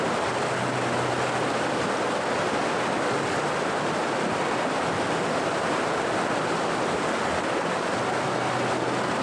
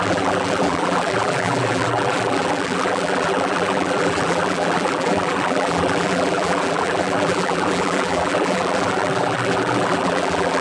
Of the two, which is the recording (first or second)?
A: first